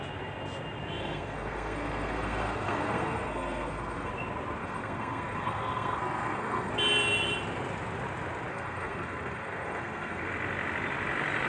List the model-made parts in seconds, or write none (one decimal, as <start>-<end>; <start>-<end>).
1.0-4.1; 4.6-6.7; 8.5-10.3